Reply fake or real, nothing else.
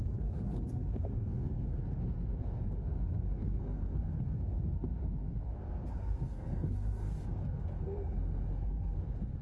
fake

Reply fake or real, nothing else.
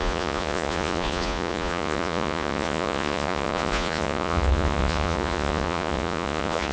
fake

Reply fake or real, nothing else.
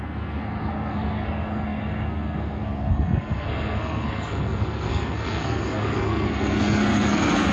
fake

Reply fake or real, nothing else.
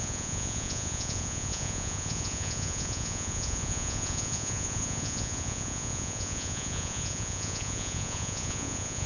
fake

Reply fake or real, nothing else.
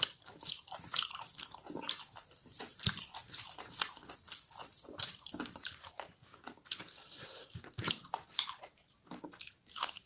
fake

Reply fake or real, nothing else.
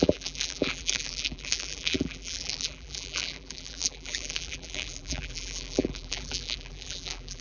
fake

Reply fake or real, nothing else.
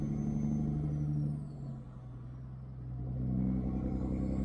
real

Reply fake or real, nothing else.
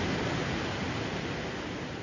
real